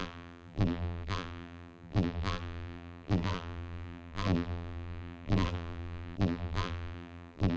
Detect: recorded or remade remade